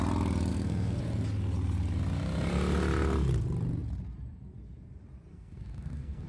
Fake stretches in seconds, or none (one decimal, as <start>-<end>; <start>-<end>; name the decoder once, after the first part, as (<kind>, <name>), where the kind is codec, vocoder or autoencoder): 0.5-1.0 (codec, SNAC); 5.3-6.3